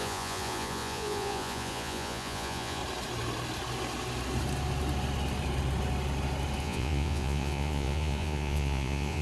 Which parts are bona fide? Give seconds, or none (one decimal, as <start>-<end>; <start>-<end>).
2.8-6.6